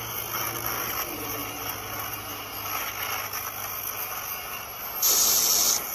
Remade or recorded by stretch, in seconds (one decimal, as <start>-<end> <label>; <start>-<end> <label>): 0.0-5.9 recorded